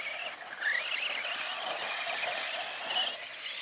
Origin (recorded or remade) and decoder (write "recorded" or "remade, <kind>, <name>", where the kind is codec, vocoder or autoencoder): recorded